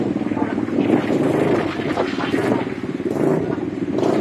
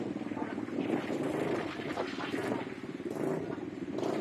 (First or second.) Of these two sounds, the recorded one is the first